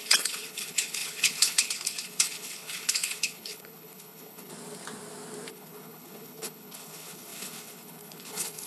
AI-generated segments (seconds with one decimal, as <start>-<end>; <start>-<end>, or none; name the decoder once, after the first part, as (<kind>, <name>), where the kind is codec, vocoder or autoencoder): 0.0-4.5 (codec, HILCodec); 5.5-8.7